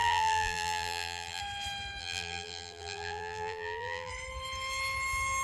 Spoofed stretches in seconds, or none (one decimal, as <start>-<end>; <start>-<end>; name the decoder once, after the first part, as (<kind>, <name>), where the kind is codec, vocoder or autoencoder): 0.0-1.4 (vocoder, BigVGAN v2); 2.0-4.1